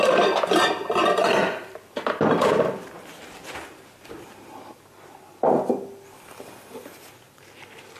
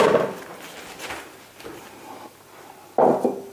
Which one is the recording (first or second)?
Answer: second